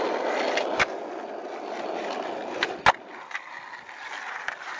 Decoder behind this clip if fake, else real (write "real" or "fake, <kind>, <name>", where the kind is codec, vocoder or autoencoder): real